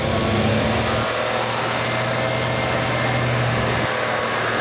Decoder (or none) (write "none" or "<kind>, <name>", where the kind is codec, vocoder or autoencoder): none